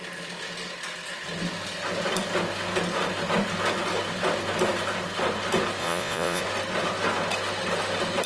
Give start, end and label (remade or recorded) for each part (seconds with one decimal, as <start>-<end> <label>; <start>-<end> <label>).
0.0-5.8 recorded; 5.8-6.4 remade; 6.4-8.3 recorded